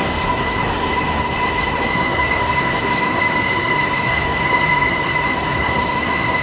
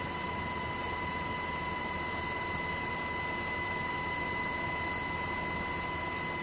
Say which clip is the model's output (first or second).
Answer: first